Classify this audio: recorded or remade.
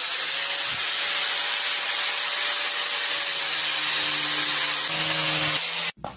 recorded